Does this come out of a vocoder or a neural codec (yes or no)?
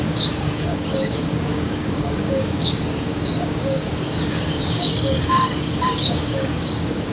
yes